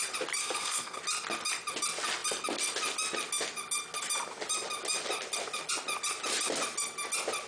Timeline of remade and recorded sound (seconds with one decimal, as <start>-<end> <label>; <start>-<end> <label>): 0.0-0.4 recorded; 0.4-1.0 remade; 1.0-7.5 recorded